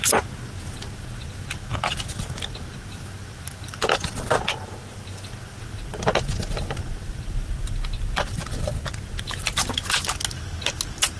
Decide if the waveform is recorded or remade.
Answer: recorded